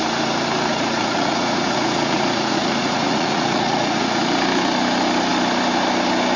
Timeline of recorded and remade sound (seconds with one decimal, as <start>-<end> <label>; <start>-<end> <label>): 0.0-0.7 recorded; 0.7-4.2 remade; 4.2-6.4 recorded